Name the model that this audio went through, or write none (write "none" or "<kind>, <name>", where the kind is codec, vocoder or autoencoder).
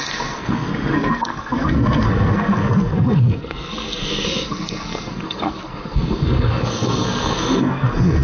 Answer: codec, SNAC